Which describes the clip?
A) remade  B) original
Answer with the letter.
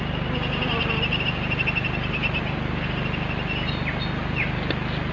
B